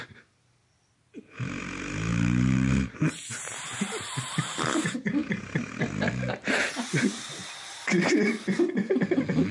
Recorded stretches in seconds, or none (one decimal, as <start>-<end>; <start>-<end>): 0.0-2.1; 4.3-9.5

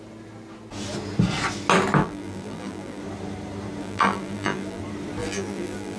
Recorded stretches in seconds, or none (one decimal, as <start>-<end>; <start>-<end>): 0.0-2.0; 3.0-3.8; 4.8-5.2

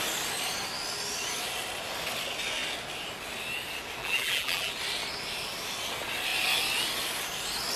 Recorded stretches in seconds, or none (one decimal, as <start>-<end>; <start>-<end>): 0.0-4.0; 4.7-7.8

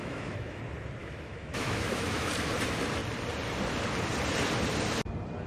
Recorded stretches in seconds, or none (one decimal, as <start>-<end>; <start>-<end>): 0.6-1.0; 2.3-5.5

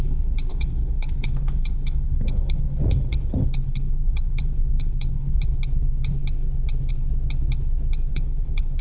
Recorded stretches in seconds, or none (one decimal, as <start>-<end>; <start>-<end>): 0.0-0.5; 5.4-8.1

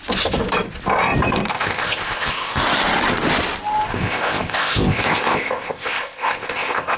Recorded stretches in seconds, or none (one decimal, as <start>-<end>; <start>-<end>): 0.0-1.5; 2.6-3.9

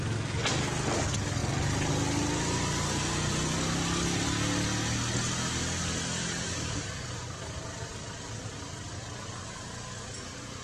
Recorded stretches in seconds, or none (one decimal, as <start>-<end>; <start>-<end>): 0.0-10.6